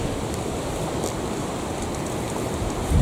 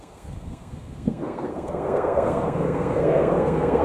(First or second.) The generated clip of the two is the second